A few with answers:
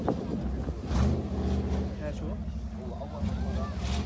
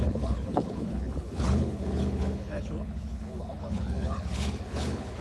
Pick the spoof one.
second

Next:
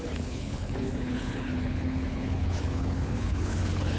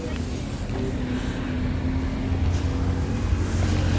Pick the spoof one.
first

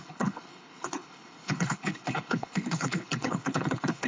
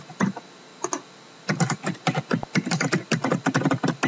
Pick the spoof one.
first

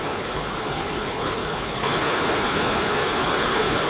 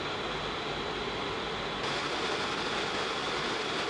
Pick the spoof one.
first